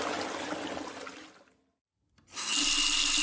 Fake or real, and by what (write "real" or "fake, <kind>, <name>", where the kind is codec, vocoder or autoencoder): real